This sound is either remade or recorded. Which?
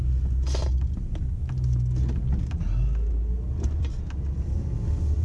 recorded